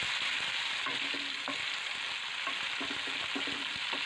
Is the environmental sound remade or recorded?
recorded